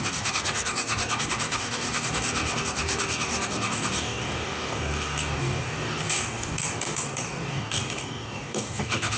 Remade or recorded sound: remade